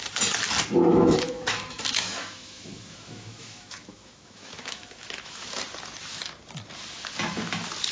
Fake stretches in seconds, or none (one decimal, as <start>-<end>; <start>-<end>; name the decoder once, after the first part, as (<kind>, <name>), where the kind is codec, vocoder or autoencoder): 0.9-5.6 (autoencoder, DAC-VAE)